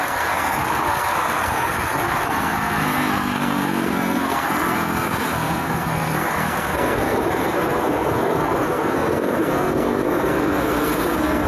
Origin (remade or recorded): remade